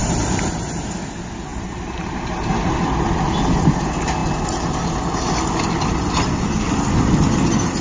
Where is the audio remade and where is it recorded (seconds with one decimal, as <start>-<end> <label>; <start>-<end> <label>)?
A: 0.0-0.9 remade; 0.9-1.5 recorded; 1.5-2.7 remade; 2.7-7.8 recorded